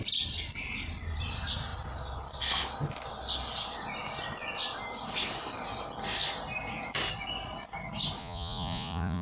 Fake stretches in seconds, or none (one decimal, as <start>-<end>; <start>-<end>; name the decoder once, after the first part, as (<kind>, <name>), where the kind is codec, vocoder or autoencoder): 8.2-9.2 (vocoder, Vocos)